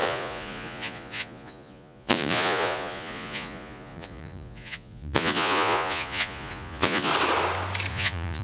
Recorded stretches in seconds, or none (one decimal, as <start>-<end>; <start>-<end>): 7.1-7.9